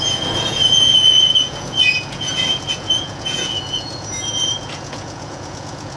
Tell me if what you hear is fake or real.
fake